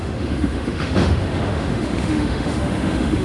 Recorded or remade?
remade